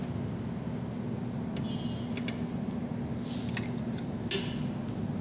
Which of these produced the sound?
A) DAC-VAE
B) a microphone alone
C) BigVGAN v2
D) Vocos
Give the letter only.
B